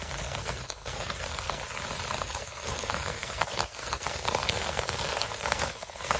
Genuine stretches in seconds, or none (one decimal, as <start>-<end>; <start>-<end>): 1.6-2.1